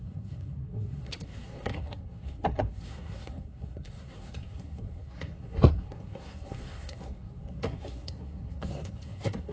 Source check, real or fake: fake